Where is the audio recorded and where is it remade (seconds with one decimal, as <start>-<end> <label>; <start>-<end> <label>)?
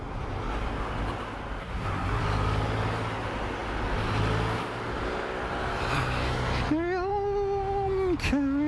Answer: 0.0-1.6 recorded; 1.6-2.2 remade; 2.2-8.7 recorded